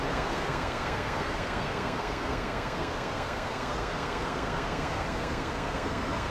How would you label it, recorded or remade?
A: remade